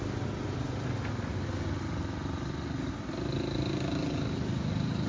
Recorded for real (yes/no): yes